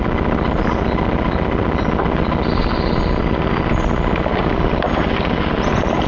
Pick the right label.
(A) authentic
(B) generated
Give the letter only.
A